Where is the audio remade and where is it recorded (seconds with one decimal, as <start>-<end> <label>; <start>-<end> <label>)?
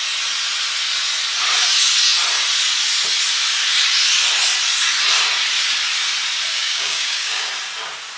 0.0-6.5 recorded; 6.5-7.5 remade; 7.5-8.2 recorded